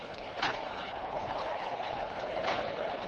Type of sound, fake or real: fake